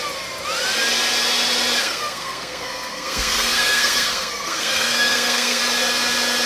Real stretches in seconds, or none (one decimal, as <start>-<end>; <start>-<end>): 0.0-1.8; 5.6-6.5